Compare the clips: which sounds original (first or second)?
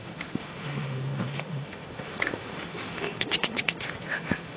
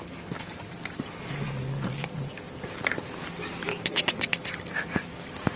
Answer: second